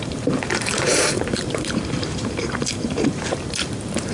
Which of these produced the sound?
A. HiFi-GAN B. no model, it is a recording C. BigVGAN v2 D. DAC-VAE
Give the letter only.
C